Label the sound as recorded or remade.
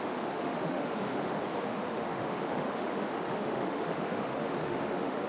remade